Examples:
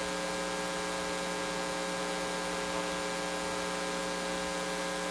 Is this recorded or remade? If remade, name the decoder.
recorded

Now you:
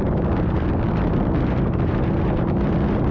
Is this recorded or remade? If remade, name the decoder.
recorded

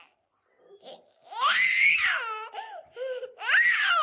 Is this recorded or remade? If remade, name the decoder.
remade, vocoder, BigVGAN v2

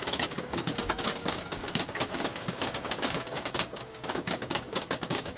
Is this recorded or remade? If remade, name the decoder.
remade, codec, DAC